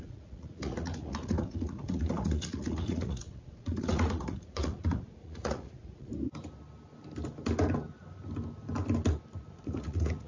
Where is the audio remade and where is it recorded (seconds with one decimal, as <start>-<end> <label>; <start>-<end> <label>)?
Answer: 0.0-6.1 remade; 6.1-9.5 recorded; 9.5-10.3 remade